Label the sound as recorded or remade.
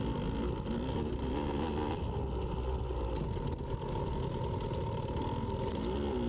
recorded